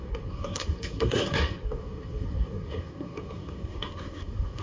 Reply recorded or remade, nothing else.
remade